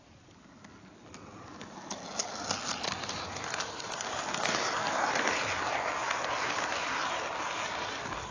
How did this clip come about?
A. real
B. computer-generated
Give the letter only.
A